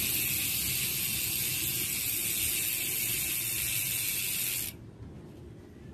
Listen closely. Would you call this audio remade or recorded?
recorded